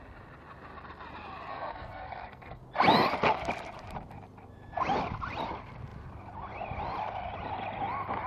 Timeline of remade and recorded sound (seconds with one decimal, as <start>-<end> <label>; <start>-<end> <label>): 0.0-1.5 recorded; 1.5-2.6 remade; 2.6-8.3 recorded